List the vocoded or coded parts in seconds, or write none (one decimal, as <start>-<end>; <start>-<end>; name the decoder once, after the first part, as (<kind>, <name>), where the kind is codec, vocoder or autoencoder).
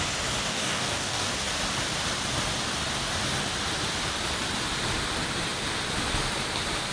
0.5-1.3 (codec, DAC)